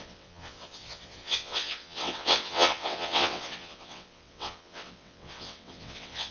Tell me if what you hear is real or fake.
fake